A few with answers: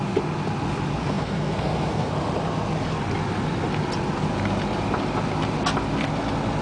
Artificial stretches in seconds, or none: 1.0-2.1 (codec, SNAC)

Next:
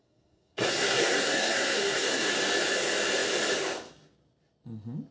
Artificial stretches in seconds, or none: 0.0-2.3 (codec, SNAC)

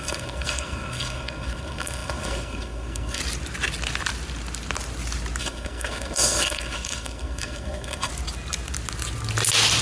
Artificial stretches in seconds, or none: 0.0-3.2 (codec, SNAC); 5.4-8.1

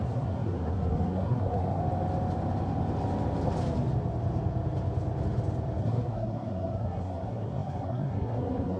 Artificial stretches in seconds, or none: 0.0-1.8 (codec, SNAC); 5.8-8.8